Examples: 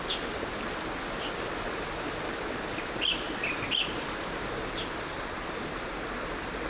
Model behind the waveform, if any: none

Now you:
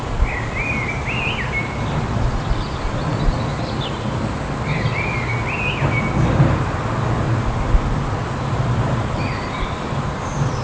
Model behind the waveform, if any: none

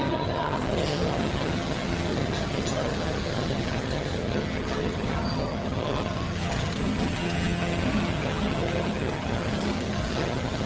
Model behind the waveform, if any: vocoder, HiFi-GAN